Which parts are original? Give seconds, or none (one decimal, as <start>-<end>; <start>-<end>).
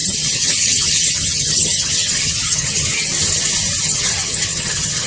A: 3.1-3.8